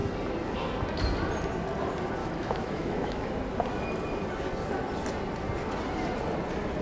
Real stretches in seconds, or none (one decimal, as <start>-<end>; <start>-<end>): 0.0-2.2; 3.3-6.8